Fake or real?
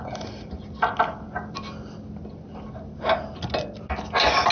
real